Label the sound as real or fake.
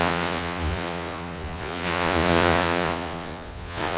fake